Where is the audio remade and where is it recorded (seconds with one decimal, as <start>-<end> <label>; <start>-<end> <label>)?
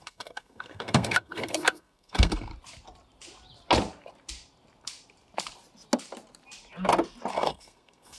0.0-2.5 remade; 2.5-7.3 recorded; 7.3-8.2 remade